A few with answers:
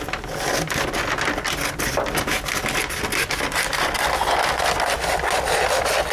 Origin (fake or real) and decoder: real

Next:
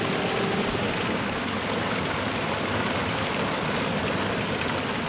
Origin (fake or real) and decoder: real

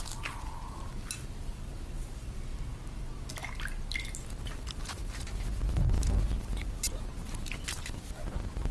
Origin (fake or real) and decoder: real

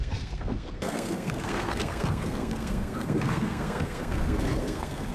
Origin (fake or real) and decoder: fake, codec, SNAC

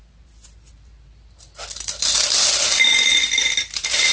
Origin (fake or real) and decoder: real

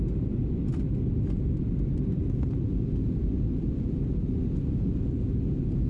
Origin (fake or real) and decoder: real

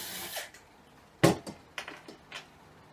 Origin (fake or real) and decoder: real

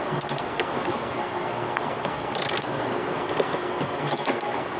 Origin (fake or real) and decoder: fake, codec, SNAC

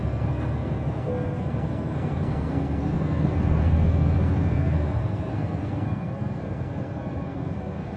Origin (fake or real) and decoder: fake, codec, SNAC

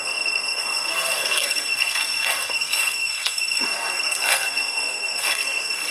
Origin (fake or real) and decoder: fake, codec, SNAC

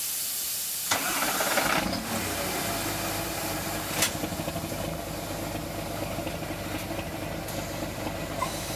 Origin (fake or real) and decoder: real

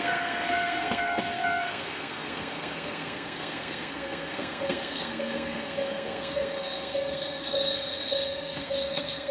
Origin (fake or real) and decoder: fake, codec, SNAC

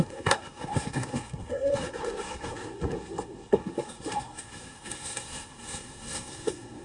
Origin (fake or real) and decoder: fake, codec, SNAC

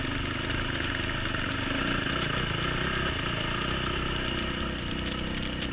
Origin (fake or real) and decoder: real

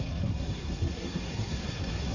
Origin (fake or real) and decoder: fake, codec, SNAC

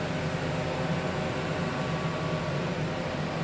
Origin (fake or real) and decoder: real